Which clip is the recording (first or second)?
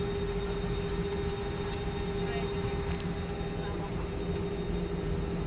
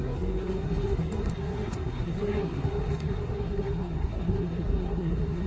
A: first